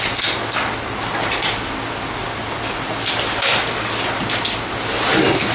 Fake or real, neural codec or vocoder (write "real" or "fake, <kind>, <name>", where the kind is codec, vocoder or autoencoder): real